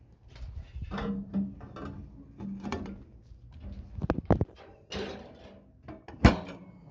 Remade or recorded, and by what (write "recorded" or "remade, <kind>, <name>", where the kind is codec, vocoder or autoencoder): recorded